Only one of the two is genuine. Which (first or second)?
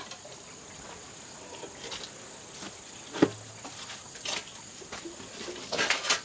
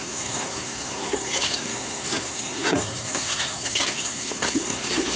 first